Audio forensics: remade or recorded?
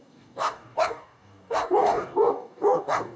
remade